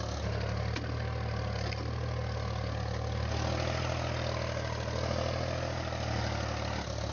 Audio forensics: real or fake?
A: real